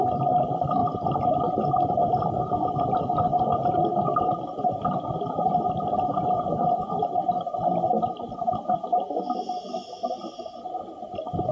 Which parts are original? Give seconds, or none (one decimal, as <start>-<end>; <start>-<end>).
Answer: 0.0-11.5